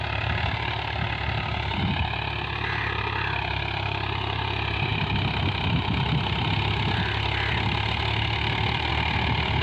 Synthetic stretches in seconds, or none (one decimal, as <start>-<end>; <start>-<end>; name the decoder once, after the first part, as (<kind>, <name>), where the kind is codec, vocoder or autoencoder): none